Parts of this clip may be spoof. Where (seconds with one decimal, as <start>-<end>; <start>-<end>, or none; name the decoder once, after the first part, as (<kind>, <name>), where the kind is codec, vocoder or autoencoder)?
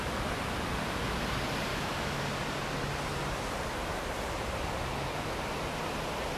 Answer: 1.7-2.2 (autoencoder, DAC-VAE)